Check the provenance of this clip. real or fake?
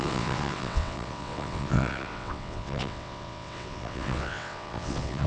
fake